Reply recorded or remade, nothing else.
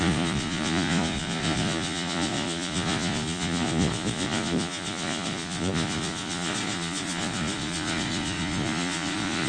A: remade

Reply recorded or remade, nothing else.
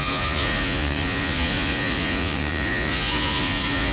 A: remade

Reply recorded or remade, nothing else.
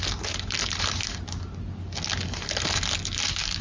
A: recorded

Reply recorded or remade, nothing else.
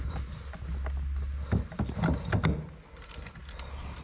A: recorded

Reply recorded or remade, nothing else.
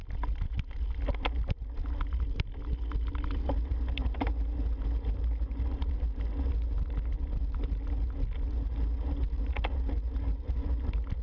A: recorded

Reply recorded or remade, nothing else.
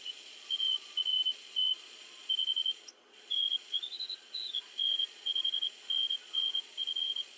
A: remade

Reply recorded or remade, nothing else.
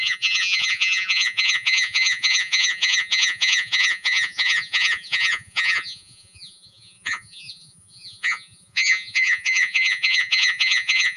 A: remade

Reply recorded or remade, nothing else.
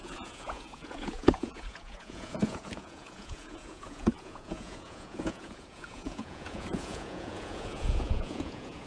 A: remade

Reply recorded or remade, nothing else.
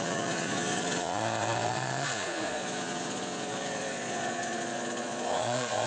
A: remade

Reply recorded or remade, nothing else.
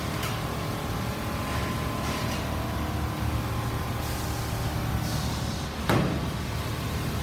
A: recorded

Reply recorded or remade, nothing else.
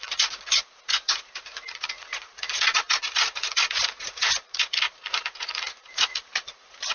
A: remade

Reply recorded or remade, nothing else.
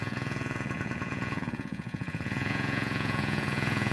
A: remade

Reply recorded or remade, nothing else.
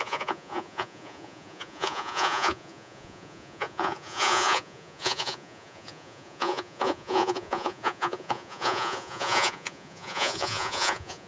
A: remade